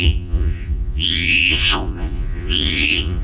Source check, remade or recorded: remade